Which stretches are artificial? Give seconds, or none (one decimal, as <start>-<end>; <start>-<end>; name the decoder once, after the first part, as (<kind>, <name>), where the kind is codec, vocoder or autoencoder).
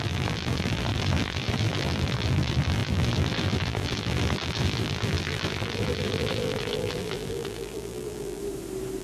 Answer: 0.0-8.4 (vocoder, BigVGAN v2)